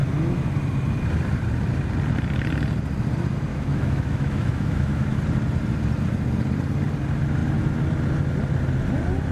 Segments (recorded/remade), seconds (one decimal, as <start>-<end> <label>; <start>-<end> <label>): 0.0-3.5 recorded; 3.5-5.2 remade; 5.2-9.3 recorded